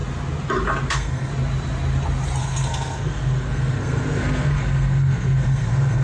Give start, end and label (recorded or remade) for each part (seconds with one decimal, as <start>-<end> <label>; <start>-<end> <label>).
0.0-0.9 recorded; 0.9-1.3 remade; 1.3-2.4 recorded; 2.4-6.0 remade